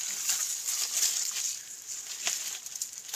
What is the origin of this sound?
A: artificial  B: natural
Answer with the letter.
B